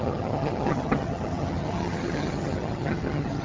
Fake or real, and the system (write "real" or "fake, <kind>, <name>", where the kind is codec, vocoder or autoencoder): fake, vocoder, HiFi-GAN